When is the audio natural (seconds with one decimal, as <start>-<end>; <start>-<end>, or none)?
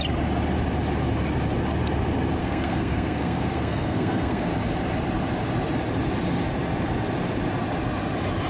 0.0-2.4; 4.5-8.5